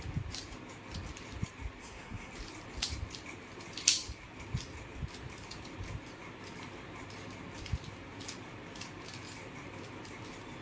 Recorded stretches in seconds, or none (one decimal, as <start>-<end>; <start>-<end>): 0.0-1.8; 2.3-10.6